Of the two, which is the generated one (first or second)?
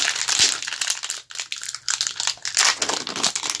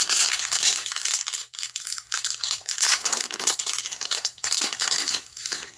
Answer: second